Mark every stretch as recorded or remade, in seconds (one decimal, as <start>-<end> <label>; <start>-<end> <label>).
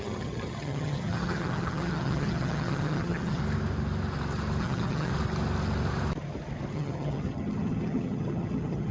0.0-3.4 remade; 3.4-4.6 recorded; 4.6-5.1 remade; 5.1-6.7 recorded; 6.7-8.9 remade